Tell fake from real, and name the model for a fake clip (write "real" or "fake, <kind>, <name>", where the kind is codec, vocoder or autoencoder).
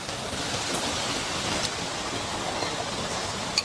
real